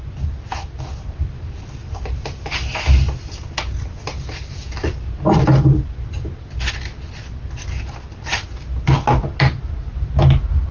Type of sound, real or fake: real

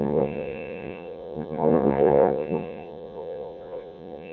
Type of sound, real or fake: fake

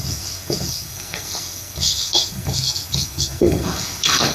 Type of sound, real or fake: fake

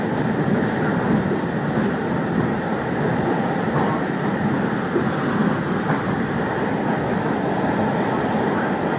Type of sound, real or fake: fake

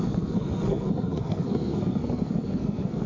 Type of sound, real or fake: fake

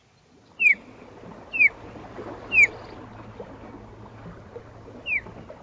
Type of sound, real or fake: real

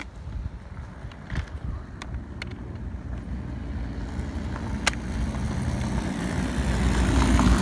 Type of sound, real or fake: real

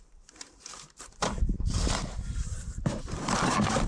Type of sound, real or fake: fake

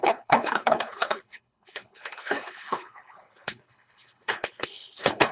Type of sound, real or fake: fake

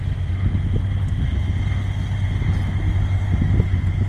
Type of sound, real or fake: real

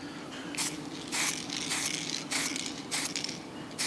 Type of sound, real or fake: real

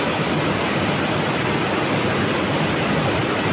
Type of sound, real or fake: real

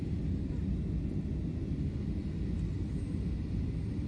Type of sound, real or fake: real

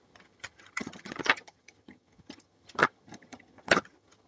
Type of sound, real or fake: fake